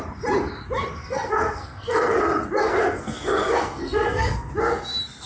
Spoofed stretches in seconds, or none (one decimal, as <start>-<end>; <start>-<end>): 1.0-2.2; 2.6-4.5